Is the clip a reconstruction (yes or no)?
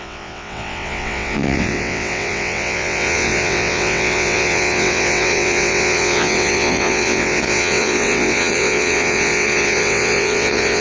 yes